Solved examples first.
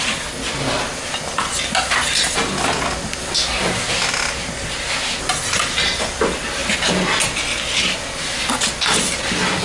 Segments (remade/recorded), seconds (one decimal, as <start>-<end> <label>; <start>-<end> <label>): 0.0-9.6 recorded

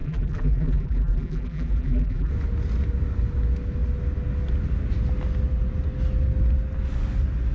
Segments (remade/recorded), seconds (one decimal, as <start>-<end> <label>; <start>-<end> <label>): 0.0-2.3 remade; 2.3-7.5 recorded

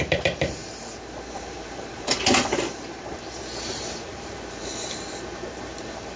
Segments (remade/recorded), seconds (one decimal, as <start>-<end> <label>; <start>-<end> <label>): 0.0-0.6 remade; 0.6-1.3 recorded; 1.3-6.2 remade

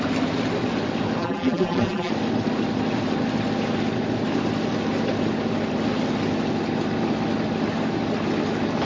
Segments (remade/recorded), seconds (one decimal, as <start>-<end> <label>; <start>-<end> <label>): 0.0-1.2 recorded; 1.2-2.1 remade; 2.1-8.8 recorded